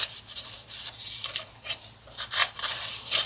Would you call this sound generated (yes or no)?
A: yes